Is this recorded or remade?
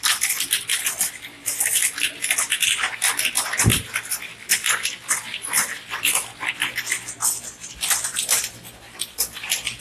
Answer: recorded